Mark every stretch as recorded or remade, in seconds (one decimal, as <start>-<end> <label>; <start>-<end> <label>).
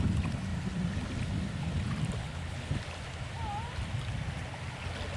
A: 0.0-2.2 recorded; 2.2-2.7 remade; 2.7-5.2 recorded